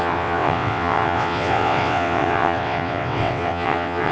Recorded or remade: remade